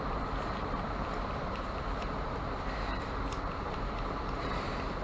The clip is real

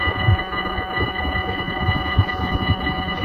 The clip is fake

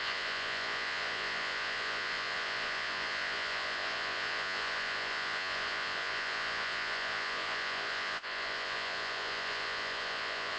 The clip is fake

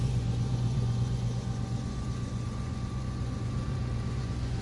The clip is fake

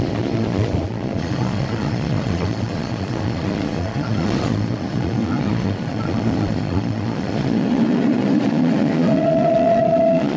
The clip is fake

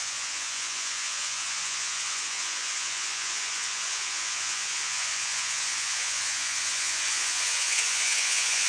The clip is fake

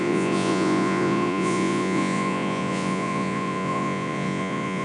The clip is fake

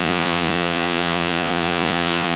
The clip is fake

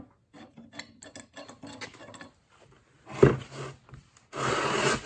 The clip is real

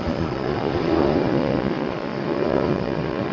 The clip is fake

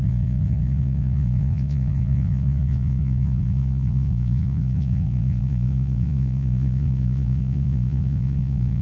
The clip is fake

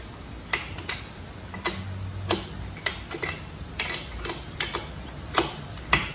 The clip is real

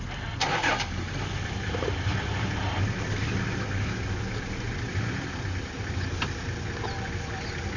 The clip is real